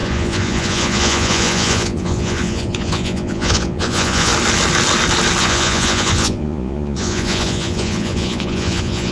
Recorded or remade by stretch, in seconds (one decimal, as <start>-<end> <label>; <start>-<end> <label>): 0.0-4.3 remade; 4.3-5.4 recorded; 5.4-9.1 remade